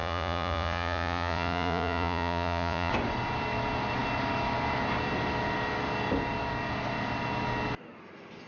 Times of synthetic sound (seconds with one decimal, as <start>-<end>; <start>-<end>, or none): 0.0-2.9

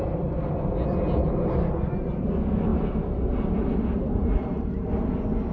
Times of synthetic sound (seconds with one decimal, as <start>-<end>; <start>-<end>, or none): none

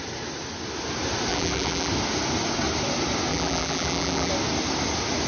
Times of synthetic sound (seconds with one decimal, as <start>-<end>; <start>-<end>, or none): 1.3-1.9; 3.3-4.3

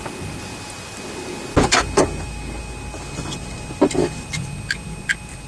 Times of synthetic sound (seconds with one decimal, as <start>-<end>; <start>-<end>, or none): none

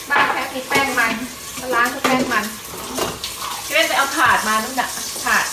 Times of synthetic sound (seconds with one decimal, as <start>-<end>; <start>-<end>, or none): none